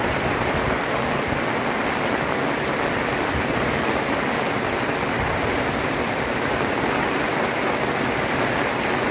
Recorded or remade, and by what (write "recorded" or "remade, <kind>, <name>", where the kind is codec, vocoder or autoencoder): recorded